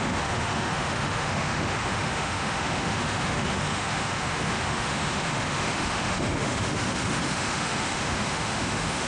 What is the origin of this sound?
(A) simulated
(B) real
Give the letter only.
A